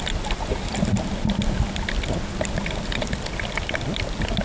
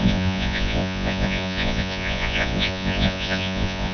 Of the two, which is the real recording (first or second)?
first